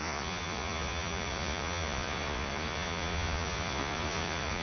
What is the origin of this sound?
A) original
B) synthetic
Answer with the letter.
B